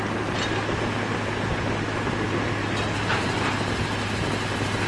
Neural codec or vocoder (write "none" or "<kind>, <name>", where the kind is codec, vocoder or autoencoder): none